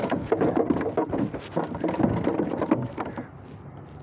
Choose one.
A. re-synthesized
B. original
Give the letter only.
B